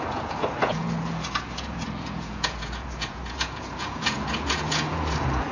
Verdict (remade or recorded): remade